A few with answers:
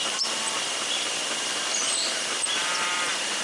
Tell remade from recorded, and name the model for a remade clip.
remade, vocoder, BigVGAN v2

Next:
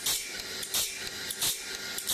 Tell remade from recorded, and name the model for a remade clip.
recorded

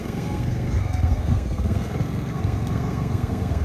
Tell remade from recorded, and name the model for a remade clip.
remade, codec, SNAC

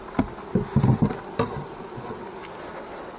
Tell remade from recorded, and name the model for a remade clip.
recorded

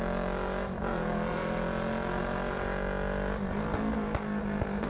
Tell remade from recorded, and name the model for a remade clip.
recorded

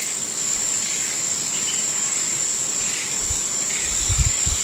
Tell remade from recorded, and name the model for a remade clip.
remade, codec, DAC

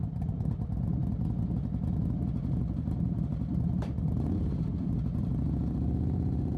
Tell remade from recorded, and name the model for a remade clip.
remade, vocoder, BigVGAN v2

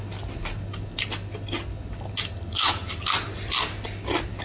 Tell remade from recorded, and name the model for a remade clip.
recorded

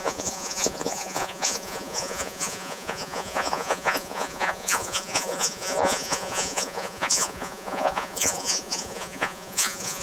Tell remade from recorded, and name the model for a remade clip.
remade, vocoder, Vocos